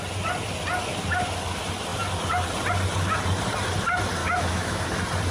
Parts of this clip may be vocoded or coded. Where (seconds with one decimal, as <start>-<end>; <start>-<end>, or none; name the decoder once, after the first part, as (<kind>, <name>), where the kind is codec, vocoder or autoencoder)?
4.2-4.8 (autoencoder, DAC-VAE)

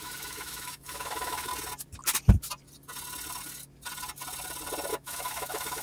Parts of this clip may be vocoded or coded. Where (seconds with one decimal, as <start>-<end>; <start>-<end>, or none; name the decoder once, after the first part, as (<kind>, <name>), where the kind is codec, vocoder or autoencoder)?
0.0-1.5 (autoencoder, DAC-VAE); 4.9-5.8

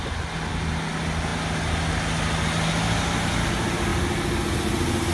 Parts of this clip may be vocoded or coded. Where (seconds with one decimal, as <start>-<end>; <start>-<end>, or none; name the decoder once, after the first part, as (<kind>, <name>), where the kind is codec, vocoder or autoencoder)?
none

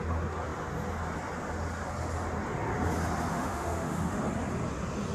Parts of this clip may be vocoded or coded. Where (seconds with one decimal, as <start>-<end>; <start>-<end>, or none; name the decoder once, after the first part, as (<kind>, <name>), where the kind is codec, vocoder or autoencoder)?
3.3-4.2 (autoencoder, DAC-VAE)

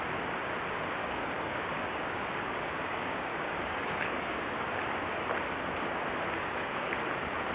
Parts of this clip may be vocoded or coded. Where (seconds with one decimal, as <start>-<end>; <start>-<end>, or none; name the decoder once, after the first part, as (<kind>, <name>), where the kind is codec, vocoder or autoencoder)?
1.0-4.7 (codec, DAC); 6.4-6.9

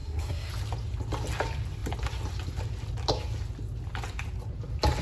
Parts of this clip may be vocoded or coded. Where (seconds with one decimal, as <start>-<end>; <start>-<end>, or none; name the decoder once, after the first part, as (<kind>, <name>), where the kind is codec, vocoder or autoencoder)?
0.0-0.5 (codec, SNAC)